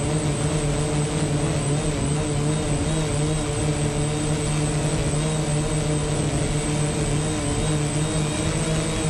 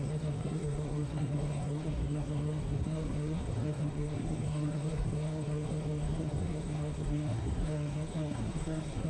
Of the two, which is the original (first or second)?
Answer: first